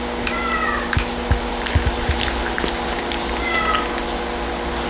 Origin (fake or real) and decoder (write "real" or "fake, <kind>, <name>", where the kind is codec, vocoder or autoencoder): real